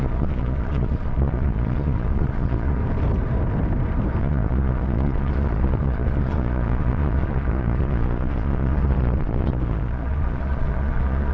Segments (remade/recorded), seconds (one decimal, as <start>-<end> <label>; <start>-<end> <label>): 0.0-2.8 remade; 2.8-4.2 recorded; 4.2-11.3 remade